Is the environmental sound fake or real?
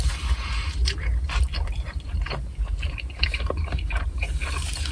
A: fake